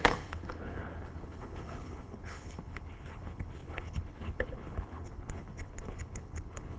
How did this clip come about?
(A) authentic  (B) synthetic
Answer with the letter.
B